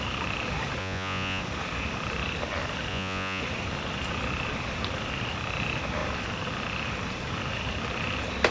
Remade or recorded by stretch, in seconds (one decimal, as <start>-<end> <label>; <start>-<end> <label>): 0.0-0.8 recorded; 0.8-1.4 remade; 1.4-2.9 recorded; 2.9-3.4 remade; 3.4-8.5 recorded